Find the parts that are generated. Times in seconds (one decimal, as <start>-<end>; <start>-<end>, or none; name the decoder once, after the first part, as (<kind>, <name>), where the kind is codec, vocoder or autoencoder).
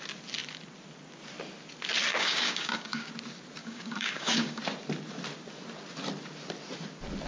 2.1-3.1 (codec, DAC); 3.6-4.6